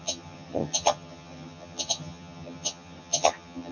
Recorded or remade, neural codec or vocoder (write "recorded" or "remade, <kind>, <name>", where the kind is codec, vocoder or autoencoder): remade, vocoder, HiFi-GAN